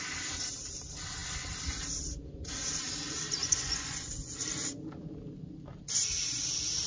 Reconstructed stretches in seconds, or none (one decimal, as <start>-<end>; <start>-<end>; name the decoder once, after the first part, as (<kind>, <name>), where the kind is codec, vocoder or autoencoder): 3.4-4.1 (vocoder, Vocos)